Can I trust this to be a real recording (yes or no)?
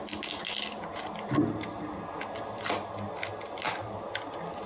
yes